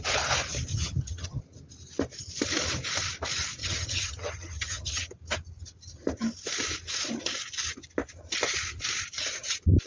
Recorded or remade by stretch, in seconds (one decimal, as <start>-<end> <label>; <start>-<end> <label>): 0.0-0.7 recorded; 0.7-1.4 remade; 1.4-3.6 recorded; 3.6-5.1 remade; 5.1-9.9 recorded